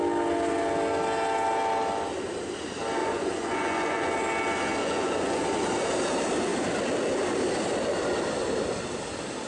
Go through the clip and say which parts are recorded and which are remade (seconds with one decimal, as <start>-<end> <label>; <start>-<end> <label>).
0.0-3.0 recorded; 3.0-4.1 remade; 4.1-4.8 recorded; 4.8-5.4 remade; 5.4-9.5 recorded